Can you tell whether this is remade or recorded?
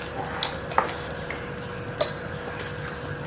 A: recorded